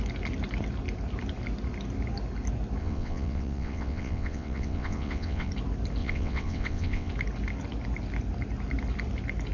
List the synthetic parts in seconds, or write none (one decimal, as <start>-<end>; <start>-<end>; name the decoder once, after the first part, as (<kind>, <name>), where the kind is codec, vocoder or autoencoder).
2.8-5.5 (vocoder, WaveNeXt); 6.0-7.1